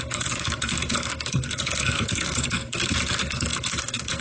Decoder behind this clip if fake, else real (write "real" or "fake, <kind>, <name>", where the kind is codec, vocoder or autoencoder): fake, codec, SNAC